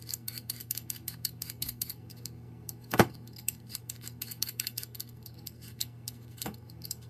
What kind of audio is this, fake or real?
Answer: fake